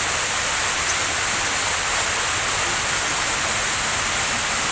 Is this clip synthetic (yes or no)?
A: no